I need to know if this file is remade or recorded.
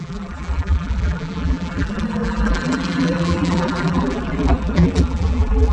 remade